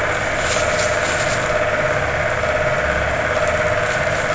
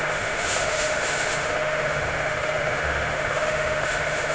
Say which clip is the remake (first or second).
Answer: second